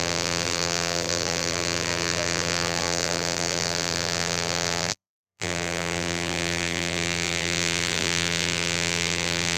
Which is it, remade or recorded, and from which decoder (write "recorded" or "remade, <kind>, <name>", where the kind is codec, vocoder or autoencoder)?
remade, vocoder, BigVGAN v2